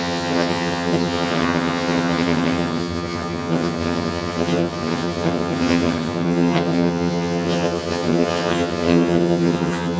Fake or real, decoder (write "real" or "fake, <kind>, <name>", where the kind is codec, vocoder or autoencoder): fake, vocoder, HiFi-GAN